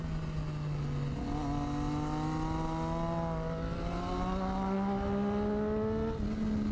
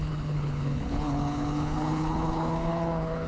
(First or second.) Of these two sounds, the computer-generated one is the second